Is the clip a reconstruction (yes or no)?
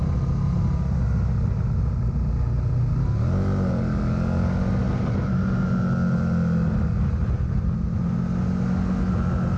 no